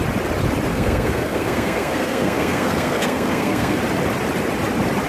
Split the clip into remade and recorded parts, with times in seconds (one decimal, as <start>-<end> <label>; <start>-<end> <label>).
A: 0.0-0.7 recorded; 0.7-3.8 remade; 3.8-5.1 recorded